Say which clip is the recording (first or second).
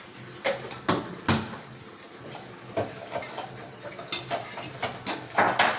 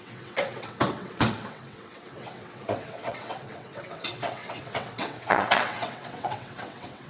first